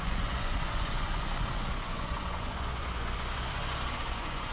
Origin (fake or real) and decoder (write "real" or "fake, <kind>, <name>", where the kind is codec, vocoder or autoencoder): fake, vocoder, Vocos